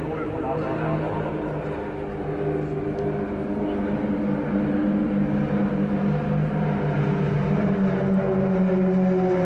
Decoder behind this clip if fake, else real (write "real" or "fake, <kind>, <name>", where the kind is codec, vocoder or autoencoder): real